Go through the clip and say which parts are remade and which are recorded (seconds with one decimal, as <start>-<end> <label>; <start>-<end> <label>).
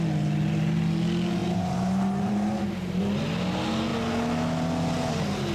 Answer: 0.0-1.4 recorded; 1.4-3.0 remade; 3.0-5.5 recorded